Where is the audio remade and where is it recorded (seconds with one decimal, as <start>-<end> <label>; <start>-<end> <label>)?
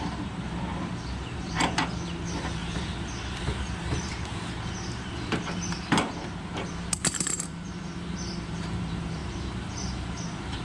0.0-10.6 remade